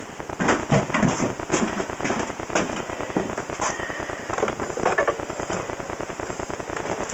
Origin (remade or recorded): recorded